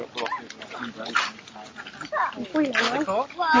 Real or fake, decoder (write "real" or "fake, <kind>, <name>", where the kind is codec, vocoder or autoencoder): real